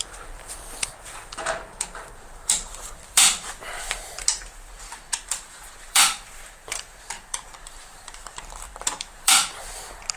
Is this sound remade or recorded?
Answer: remade